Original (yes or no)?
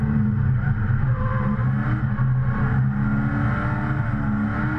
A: yes